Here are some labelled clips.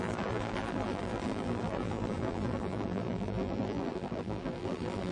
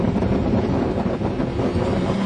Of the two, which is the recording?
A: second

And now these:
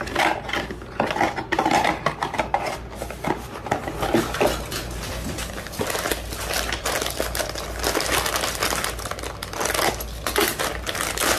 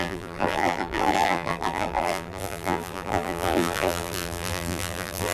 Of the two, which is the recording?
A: first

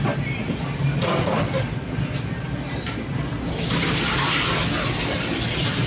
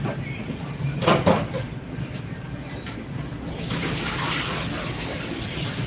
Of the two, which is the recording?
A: first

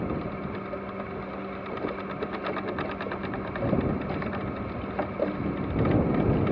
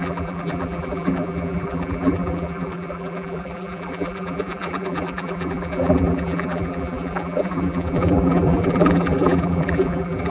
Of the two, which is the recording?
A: first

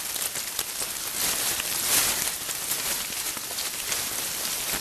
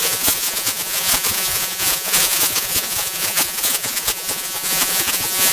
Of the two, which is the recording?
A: first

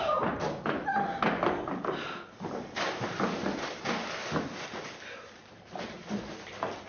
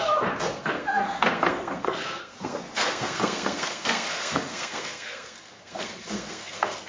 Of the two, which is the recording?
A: first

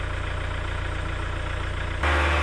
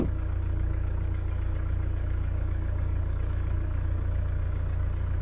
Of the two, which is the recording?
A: first